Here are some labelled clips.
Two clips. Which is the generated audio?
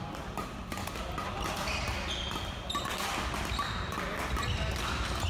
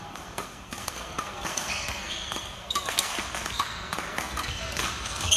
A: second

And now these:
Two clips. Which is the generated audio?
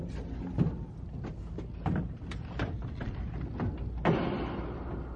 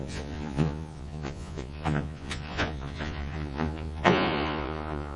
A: second